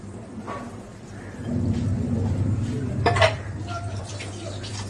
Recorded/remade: remade